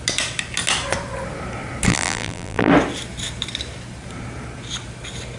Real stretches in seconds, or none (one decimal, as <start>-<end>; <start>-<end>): 0.0-1.9; 2.7-5.4